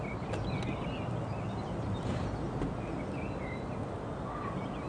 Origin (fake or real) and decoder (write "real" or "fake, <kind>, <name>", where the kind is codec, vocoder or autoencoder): real